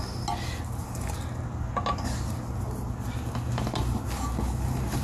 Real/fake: real